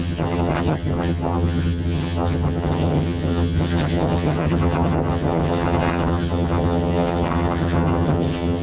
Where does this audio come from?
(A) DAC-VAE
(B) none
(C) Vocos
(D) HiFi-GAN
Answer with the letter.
D